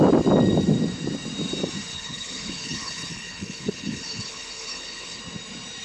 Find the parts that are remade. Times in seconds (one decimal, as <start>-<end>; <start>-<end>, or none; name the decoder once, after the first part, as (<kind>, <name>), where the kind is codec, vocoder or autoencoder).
1.9-5.2 (codec, HILCodec)